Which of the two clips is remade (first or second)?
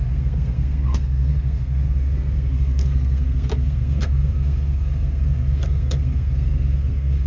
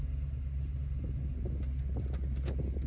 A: first